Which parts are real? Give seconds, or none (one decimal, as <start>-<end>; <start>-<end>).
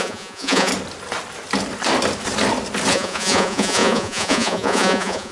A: 0.7-2.9